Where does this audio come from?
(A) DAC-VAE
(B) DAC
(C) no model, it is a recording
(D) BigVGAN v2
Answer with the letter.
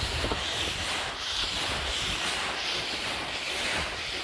C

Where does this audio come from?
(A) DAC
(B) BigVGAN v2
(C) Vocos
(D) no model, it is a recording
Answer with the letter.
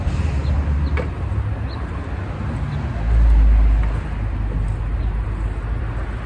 D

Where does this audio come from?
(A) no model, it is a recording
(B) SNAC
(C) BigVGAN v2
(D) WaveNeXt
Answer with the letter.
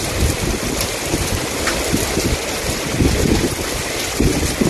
A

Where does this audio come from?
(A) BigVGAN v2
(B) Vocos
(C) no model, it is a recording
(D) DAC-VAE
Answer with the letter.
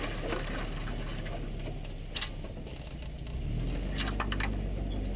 C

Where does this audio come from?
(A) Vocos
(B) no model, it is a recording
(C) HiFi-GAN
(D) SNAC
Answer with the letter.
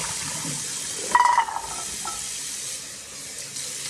B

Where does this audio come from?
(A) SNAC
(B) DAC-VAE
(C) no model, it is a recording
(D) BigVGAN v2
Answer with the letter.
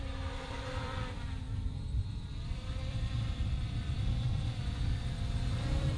D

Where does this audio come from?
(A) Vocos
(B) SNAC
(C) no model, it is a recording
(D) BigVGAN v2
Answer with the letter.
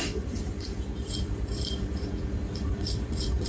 A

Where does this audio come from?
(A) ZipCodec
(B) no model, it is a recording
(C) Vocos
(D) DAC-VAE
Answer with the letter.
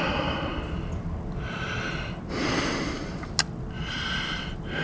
B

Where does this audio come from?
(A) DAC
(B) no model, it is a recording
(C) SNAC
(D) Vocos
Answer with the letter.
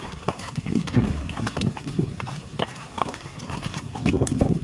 C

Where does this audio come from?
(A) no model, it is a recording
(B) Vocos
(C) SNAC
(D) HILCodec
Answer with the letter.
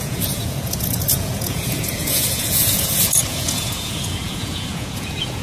B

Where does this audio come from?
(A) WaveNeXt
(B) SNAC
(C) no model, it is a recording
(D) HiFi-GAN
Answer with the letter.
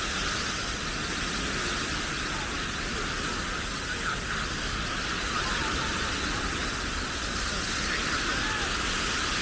C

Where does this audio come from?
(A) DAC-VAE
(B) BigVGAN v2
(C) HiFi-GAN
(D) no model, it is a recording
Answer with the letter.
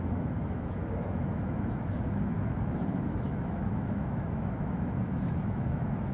A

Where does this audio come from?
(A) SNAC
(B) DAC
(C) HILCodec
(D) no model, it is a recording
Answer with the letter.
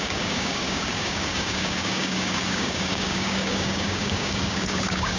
B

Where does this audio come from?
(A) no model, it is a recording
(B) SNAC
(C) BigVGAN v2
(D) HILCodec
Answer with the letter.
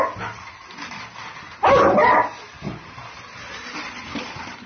A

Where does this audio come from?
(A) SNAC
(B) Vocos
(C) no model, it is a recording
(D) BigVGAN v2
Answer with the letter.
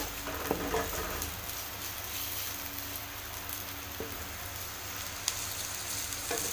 C